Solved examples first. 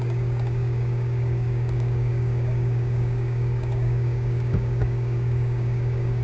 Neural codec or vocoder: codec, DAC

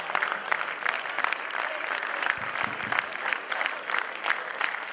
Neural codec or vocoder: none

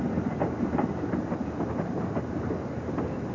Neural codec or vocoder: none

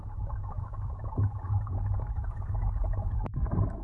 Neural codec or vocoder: codec, DAC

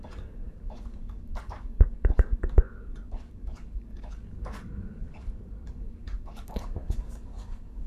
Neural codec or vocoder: codec, DAC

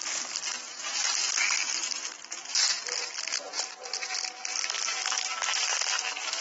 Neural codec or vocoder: none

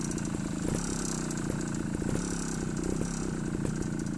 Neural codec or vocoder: none